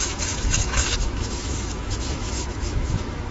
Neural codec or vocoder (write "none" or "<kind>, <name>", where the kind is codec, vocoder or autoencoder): autoencoder, DAC-VAE